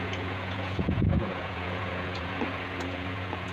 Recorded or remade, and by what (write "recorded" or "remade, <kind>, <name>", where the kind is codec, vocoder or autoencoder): remade, vocoder, Vocos